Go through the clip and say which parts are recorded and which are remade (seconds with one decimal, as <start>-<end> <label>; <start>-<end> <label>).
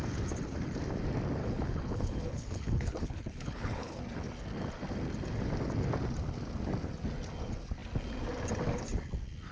0.0-1.4 recorded; 1.4-4.0 remade; 4.0-9.5 recorded